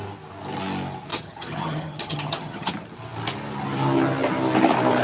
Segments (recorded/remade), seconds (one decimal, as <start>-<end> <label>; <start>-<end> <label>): 0.0-1.1 recorded; 1.1-2.7 remade; 2.7-5.0 recorded